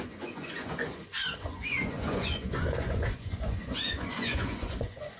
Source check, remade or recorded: remade